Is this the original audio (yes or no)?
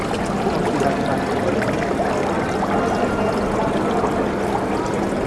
yes